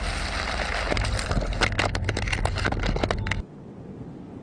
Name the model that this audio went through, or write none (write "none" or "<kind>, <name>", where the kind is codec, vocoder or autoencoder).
none